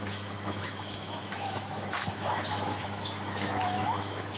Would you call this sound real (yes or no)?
no